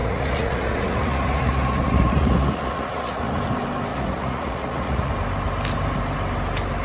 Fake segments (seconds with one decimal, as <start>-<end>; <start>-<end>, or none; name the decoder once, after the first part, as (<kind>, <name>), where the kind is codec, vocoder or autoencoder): 0.0-3.4 (vocoder, Vocos); 3.9-5.1